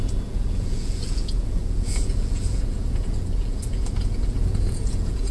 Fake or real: fake